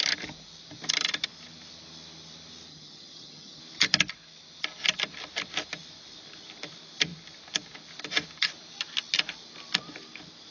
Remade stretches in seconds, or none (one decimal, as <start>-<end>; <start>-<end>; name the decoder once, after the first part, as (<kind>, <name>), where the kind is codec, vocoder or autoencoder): 2.7-3.6 (vocoder, HiFi-GAN)